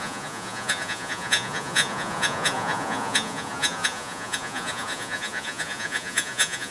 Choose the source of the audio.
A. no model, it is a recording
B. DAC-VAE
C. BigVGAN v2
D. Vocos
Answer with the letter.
D